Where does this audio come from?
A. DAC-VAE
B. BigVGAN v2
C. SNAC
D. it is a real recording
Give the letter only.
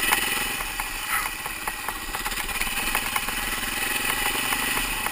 D